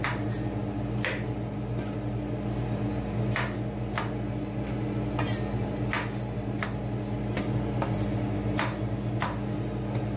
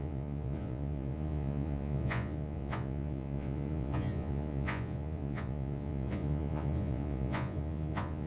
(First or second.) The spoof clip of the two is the second